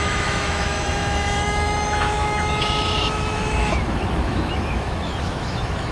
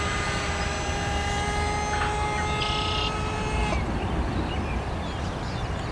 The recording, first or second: second